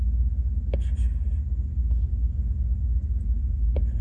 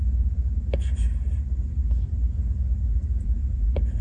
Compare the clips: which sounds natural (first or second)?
first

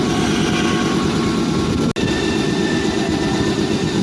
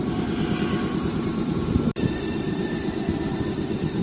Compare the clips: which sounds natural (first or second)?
first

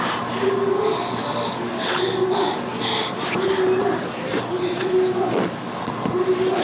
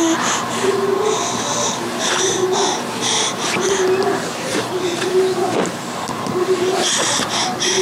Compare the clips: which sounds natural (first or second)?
first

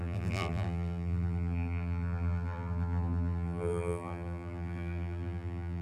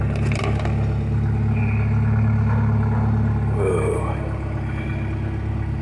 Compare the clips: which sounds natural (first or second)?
second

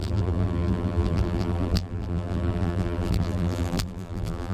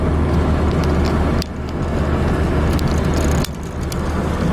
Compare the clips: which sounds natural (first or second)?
second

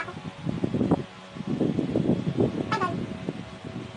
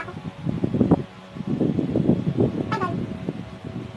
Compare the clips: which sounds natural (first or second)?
first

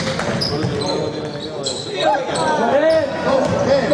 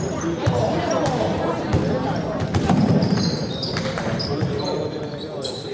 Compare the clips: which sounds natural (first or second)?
first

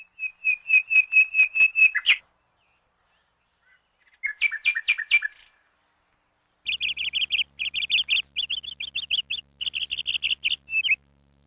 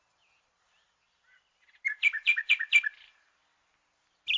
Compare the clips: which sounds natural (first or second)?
first